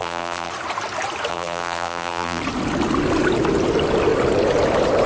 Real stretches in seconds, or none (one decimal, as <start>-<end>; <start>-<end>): 0.5-1.3; 2.4-5.1